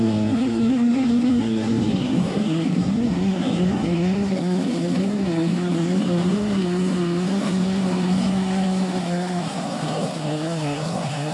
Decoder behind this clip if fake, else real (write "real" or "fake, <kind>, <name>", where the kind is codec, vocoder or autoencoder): fake, codec, SNAC